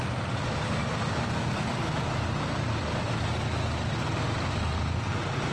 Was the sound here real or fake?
real